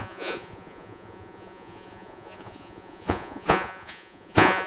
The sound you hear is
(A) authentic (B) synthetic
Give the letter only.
B